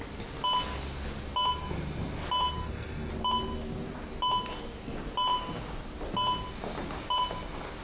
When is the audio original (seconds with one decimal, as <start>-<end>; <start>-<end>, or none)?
0.0-2.6; 3.1-7.8